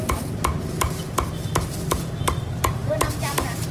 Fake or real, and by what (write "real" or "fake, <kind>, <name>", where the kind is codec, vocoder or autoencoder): fake, vocoder, BigVGAN v2